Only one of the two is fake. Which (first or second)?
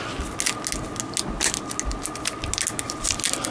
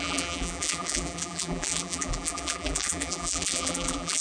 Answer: second